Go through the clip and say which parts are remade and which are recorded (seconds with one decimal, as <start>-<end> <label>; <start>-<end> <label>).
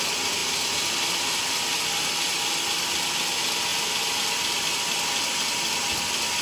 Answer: 0.0-6.4 recorded